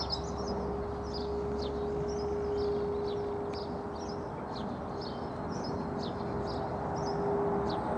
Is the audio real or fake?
real